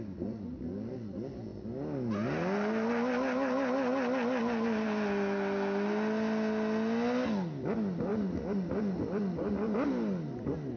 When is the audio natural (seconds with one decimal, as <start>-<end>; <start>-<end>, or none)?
0.0-10.8